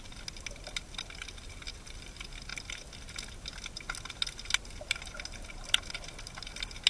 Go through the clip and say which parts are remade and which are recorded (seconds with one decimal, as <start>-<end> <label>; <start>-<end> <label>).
0.0-6.9 recorded